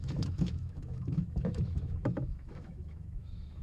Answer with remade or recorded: remade